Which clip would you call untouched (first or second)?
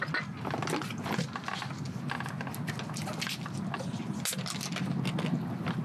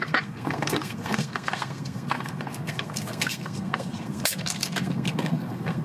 first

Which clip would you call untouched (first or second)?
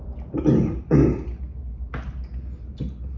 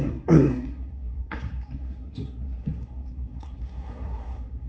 first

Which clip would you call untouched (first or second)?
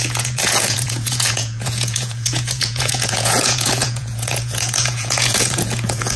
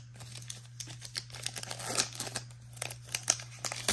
second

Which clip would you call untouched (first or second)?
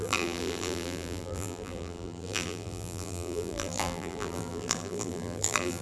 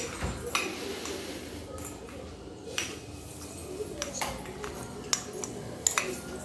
second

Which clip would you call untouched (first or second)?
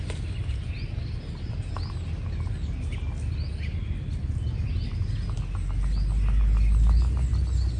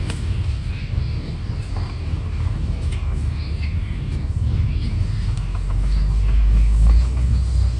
first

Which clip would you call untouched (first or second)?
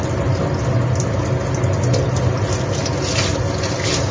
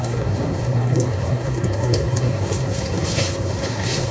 first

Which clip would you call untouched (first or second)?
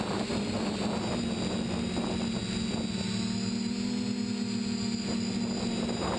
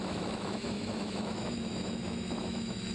first